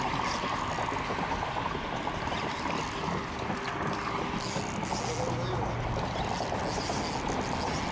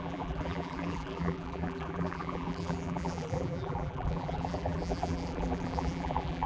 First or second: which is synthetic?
second